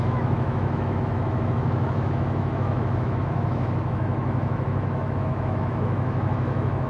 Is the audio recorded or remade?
remade